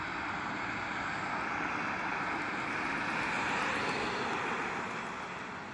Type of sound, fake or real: real